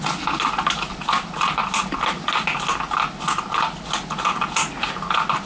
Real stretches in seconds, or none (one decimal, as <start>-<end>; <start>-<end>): 0.0-5.5